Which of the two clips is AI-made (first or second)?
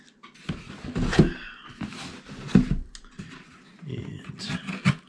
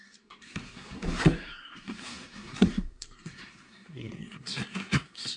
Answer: second